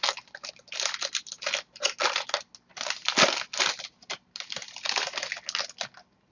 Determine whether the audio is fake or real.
real